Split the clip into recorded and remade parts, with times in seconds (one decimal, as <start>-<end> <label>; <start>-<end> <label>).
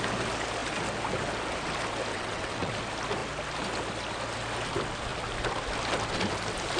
0.0-2.1 recorded; 2.1-2.7 remade; 2.7-6.8 recorded